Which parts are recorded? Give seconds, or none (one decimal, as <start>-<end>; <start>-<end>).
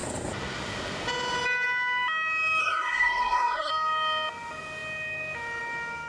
0.0-2.6; 3.7-6.1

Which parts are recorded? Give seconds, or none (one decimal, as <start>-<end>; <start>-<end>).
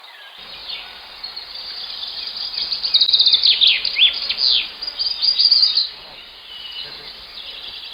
0.0-5.8; 6.5-7.9